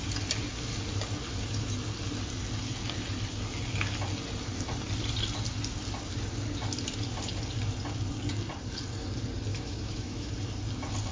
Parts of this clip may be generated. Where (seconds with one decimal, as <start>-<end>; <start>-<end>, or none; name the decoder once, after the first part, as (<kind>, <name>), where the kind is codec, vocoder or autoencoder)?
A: 9.5-10.3 (autoencoder, DAC-VAE)